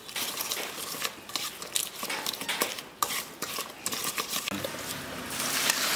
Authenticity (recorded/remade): recorded